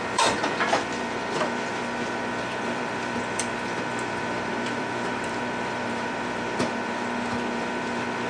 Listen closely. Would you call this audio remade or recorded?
remade